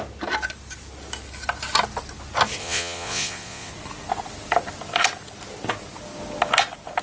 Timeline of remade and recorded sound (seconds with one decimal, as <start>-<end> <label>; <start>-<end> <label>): 0.0-2.6 recorded; 2.6-3.7 remade; 3.7-7.0 recorded